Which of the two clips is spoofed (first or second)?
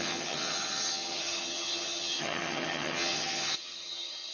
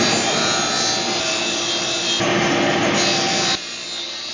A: first